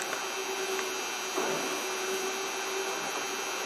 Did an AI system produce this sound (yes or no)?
no